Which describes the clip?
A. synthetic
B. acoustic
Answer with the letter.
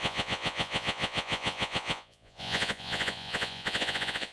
A